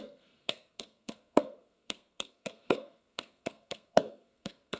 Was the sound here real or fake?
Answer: fake